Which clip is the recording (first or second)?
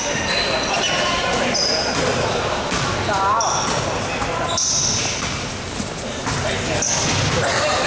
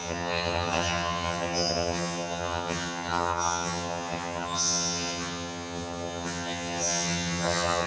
first